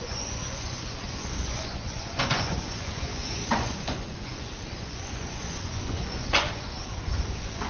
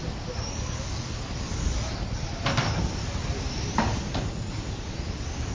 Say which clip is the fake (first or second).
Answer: first